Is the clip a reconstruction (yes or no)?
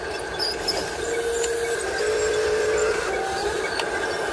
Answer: no